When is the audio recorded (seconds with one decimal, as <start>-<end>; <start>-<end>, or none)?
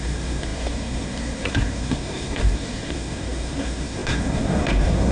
none